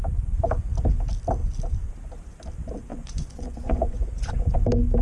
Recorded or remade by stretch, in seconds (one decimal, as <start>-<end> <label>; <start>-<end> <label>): 0.0-2.9 recorded; 2.9-4.3 remade; 4.3-5.0 recorded